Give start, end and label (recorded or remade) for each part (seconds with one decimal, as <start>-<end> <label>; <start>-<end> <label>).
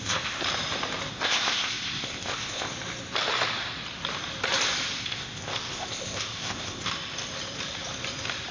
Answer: 0.0-0.4 remade; 0.4-1.1 recorded; 1.1-2.7 remade; 2.7-5.0 recorded; 5.0-6.9 remade; 6.9-8.5 recorded